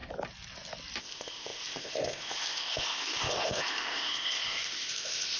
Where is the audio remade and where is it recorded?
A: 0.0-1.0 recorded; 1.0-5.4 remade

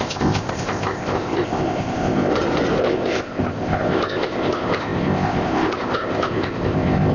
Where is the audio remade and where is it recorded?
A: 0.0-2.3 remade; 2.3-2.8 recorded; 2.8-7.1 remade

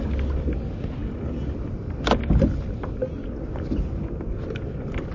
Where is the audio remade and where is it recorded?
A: 0.0-5.1 recorded

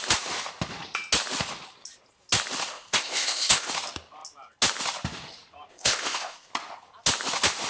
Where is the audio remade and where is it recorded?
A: 0.0-2.7 recorded; 2.7-3.7 remade; 3.7-5.7 recorded; 5.7-6.5 remade; 6.5-7.7 recorded